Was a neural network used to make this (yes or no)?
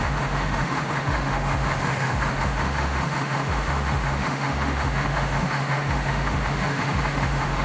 yes